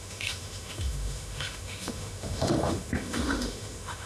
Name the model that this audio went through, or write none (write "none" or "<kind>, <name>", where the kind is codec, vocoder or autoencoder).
autoencoder, DAC-VAE